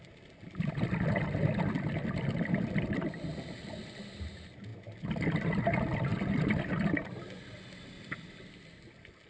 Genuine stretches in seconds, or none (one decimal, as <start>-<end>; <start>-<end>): 0.0-9.3